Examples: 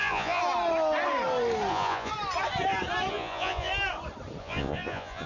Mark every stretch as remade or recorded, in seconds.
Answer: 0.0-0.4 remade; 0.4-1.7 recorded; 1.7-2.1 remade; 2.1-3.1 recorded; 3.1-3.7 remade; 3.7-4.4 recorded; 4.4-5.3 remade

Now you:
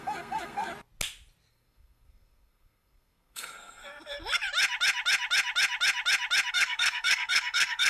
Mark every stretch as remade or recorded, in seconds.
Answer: 0.0-0.7 remade; 0.7-1.5 recorded; 1.5-3.8 remade; 3.8-6.5 recorded; 6.5-7.9 remade

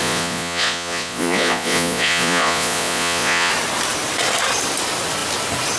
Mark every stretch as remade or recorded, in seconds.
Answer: 0.0-3.5 remade; 3.5-5.8 recorded

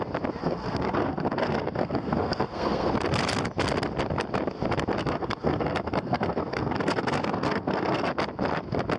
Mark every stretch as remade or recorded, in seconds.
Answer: 0.0-0.4 recorded; 0.4-2.9 remade; 2.9-5.0 recorded; 5.0-8.1 remade; 8.1-9.0 recorded

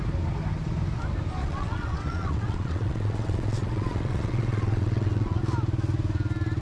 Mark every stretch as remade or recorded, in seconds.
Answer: 0.0-1.4 recorded; 1.4-5.4 remade; 5.4-6.6 recorded

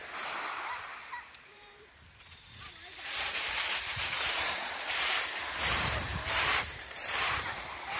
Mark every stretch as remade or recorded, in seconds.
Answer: 0.0-0.9 remade; 0.9-1.5 recorded; 1.5-8.0 remade

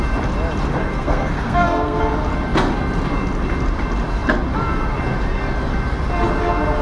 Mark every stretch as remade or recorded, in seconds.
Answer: 0.0-0.8 recorded; 0.8-2.0 remade; 2.0-6.8 recorded